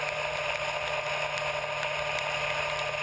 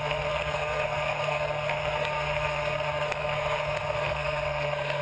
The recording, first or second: first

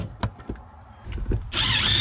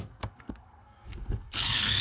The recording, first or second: first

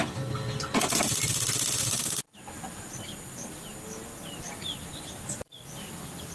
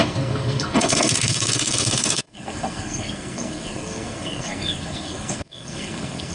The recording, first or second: first